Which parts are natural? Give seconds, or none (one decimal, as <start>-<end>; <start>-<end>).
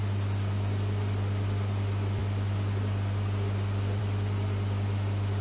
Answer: 0.0-5.4